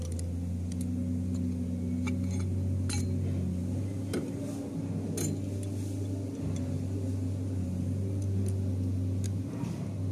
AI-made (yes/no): no